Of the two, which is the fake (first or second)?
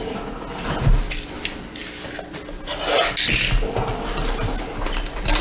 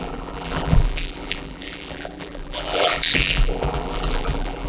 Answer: second